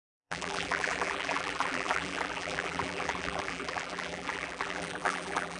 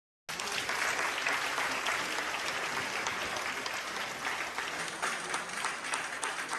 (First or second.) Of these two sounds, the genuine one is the second